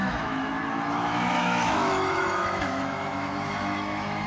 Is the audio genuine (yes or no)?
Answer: no